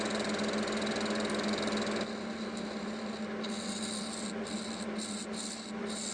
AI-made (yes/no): no